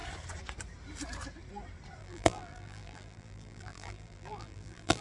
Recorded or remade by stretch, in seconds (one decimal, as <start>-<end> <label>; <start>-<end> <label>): 0.0-2.0 recorded; 2.0-5.0 remade